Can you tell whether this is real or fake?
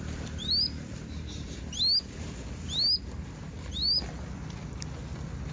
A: real